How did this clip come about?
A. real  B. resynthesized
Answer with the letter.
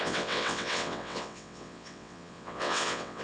B